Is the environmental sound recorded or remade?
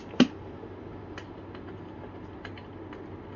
recorded